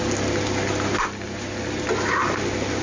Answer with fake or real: real